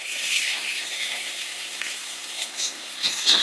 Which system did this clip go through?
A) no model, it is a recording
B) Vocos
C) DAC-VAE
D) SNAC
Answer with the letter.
D